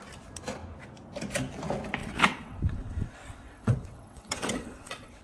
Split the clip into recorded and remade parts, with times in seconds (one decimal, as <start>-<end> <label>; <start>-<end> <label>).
0.0-2.0 recorded; 2.0-5.2 remade